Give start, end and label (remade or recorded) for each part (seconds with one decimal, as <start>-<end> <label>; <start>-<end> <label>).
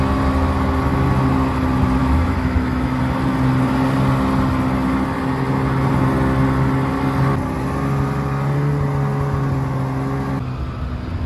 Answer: 0.0-2.0 recorded; 2.0-3.0 remade; 3.0-11.3 recorded